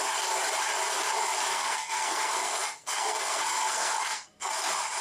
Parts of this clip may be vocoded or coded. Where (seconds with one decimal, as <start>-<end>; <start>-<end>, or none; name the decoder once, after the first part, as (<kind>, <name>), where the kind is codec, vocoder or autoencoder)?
1.5-4.5 (codec, SNAC)